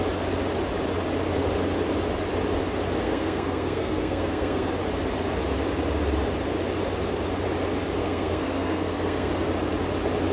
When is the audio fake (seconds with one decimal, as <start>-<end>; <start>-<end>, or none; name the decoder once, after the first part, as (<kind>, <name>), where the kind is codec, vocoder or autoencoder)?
3.0-4.7 (codec, SNAC); 8.0-9.3